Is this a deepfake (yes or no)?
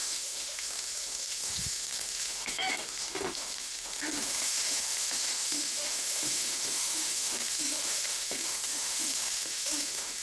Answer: yes